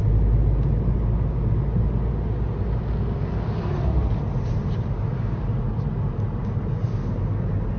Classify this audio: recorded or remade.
recorded